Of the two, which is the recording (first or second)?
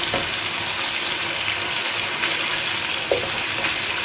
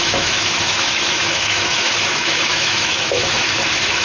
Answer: first